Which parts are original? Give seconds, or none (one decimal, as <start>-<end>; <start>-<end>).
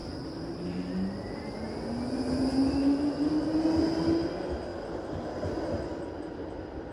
0.0-6.9